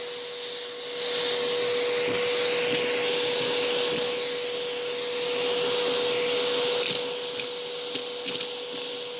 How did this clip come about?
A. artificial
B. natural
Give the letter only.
B